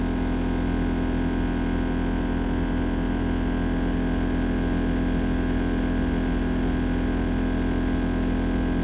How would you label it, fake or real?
real